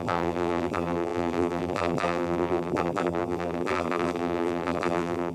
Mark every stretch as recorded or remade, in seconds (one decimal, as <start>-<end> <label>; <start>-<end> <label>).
0.0-5.3 remade